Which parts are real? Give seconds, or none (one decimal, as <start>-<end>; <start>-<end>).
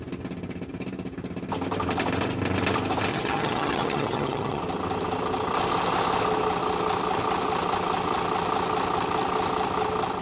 0.0-3.1; 4.6-10.2